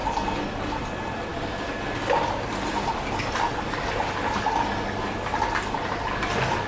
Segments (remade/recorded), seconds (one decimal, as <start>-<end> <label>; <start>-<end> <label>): 0.0-6.7 recorded